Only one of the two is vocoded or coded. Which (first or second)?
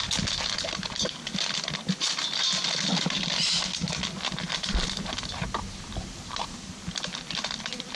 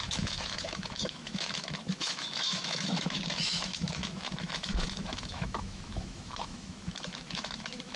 second